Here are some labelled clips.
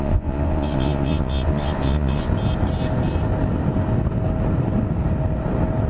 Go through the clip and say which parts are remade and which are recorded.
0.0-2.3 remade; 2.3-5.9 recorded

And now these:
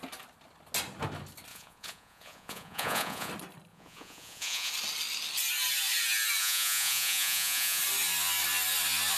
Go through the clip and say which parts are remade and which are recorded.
0.0-1.5 recorded; 1.5-3.3 remade; 3.3-3.7 recorded; 3.7-4.7 remade; 4.7-6.4 recorded; 6.4-7.8 remade; 7.8-9.2 recorded

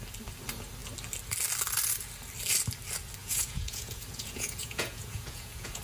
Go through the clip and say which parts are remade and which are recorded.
0.0-3.2 recorded; 3.2-5.8 remade

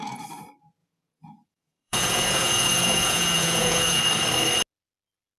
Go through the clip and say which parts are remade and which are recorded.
0.0-0.8 recorded; 0.8-4.0 remade; 4.0-5.4 recorded

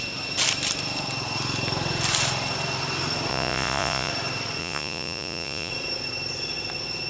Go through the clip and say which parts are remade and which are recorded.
0.0-3.3 recorded; 3.3-4.1 remade; 4.1-4.6 recorded; 4.6-5.7 remade; 5.7-7.1 recorded

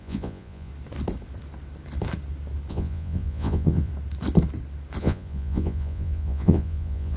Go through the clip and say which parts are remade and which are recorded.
0.0-0.7 remade; 0.7-2.7 recorded; 2.7-3.9 remade; 3.9-5.0 recorded; 5.0-7.2 remade

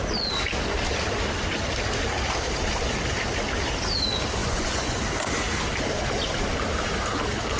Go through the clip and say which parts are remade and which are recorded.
0.0-4.4 recorded; 4.4-5.0 remade; 5.0-7.6 recorded

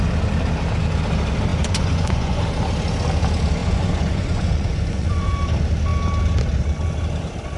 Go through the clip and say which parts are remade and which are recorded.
0.0-1.5 recorded; 1.5-2.4 remade; 2.4-3.6 recorded; 3.6-5.3 remade; 5.3-7.6 recorded